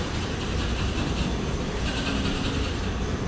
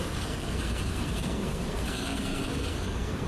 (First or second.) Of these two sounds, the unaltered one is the first